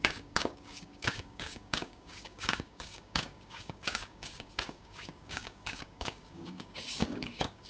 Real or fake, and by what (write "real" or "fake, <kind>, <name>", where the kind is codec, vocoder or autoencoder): fake, codec, DAC